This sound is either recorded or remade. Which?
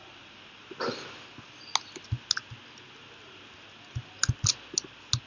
recorded